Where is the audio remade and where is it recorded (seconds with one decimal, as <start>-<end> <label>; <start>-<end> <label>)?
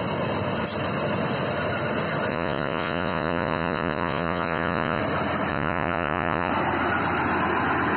0.0-2.3 recorded; 2.3-5.0 remade; 5.0-5.5 recorded; 5.5-6.5 remade; 6.5-8.0 recorded